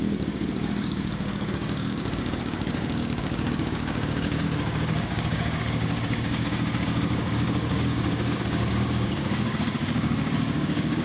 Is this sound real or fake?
fake